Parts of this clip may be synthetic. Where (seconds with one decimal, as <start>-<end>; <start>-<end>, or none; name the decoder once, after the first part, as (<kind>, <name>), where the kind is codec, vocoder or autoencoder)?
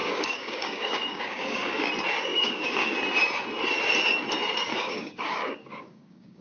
0.0-1.9 (codec, DAC); 2.3-2.9; 4.7-6.4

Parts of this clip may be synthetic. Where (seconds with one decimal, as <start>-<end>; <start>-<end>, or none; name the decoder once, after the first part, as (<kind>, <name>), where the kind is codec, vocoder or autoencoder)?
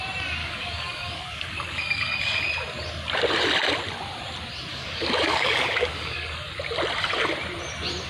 0.4-2.4 (codec, DAC); 4.7-6.5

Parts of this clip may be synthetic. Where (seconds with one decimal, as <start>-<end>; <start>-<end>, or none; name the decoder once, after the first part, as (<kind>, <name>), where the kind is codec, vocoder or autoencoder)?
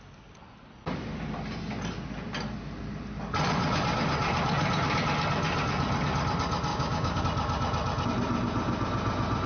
6.7-7.2 (codec, DAC)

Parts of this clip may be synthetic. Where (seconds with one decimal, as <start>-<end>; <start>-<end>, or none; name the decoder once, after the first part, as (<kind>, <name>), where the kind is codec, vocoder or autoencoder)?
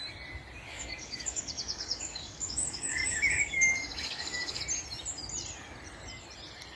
0.7-4.6 (codec, DAC)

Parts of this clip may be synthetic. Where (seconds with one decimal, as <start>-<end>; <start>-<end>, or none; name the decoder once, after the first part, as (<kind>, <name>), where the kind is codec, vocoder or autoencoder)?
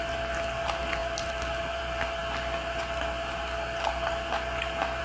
none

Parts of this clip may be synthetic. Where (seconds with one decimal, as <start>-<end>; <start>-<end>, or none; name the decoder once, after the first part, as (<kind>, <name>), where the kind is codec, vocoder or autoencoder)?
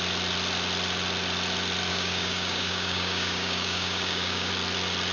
1.9-4.5 (codec, DAC)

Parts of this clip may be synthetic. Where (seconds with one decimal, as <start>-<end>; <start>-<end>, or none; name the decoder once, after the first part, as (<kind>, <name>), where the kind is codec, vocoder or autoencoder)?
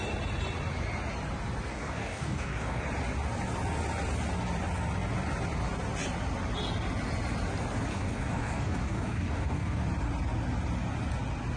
1.7-2.8 (codec, DAC); 7.9-9.8